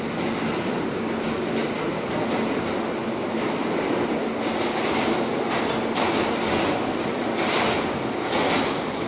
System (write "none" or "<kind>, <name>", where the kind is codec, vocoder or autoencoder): none